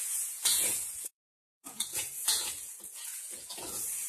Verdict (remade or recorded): remade